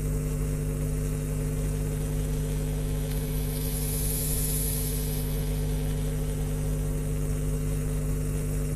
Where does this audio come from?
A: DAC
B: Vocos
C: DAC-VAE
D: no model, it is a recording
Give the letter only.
C